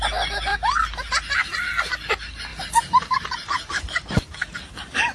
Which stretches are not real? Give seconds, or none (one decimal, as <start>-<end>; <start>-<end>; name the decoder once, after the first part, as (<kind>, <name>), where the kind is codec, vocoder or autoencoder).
none